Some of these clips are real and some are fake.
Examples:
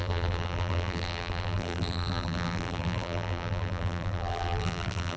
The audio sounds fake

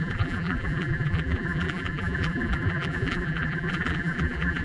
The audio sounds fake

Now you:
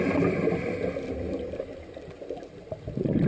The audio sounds real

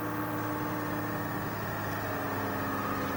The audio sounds real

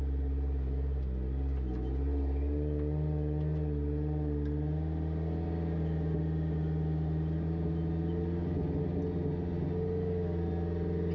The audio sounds real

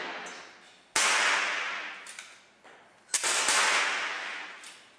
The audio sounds real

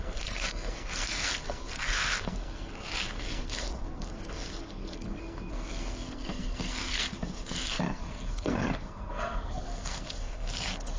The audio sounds fake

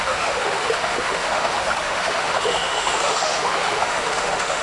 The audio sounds fake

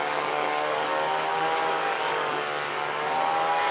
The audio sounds fake